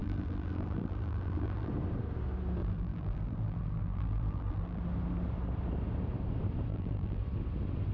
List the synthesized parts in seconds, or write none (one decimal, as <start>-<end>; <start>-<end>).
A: 0.0-1.7; 2.6-4.8; 6.7-7.2

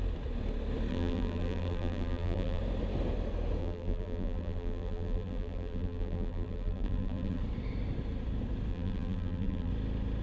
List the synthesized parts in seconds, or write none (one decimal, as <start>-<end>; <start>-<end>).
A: 0.9-2.6; 3.6-7.4; 8.7-9.7

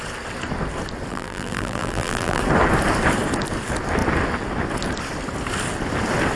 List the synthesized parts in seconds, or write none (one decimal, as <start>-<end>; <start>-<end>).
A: 1.1-2.4

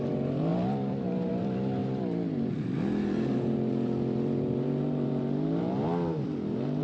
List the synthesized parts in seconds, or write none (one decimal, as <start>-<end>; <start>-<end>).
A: 0.0-6.8

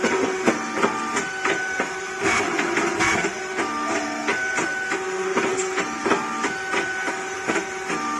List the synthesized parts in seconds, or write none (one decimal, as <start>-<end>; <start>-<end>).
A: 5.3-6.0

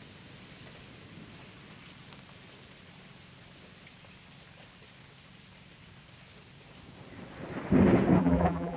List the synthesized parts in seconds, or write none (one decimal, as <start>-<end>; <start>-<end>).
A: 8.2-8.8

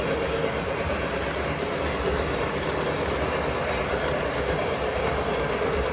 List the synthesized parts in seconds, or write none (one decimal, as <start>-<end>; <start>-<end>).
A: 2.1-5.4